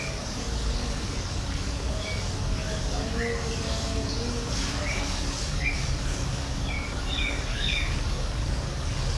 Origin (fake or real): fake